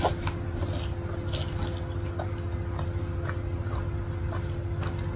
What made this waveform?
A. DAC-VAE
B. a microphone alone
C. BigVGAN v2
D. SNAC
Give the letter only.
B